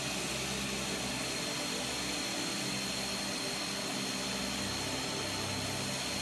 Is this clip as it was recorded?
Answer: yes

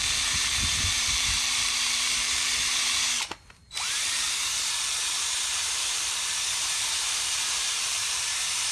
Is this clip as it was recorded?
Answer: no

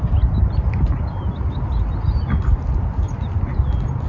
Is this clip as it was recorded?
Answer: yes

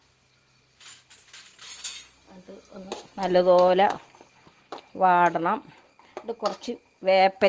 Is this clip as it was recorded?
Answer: yes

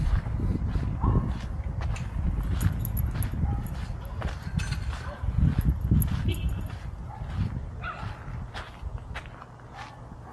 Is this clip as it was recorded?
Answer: yes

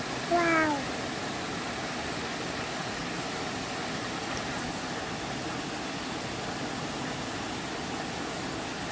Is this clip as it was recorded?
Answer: yes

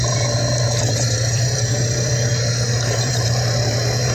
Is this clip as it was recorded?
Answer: no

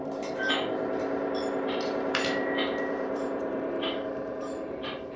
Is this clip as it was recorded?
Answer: no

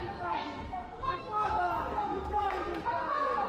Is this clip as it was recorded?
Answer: no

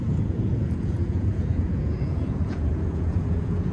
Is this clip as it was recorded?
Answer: no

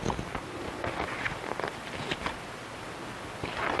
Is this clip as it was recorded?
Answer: no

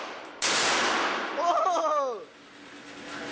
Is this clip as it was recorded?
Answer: yes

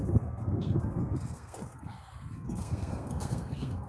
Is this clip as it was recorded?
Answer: no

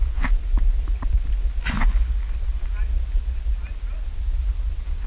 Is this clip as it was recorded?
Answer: yes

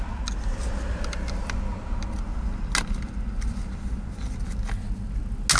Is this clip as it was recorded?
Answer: yes